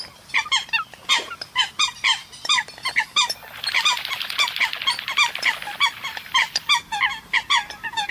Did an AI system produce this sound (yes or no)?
no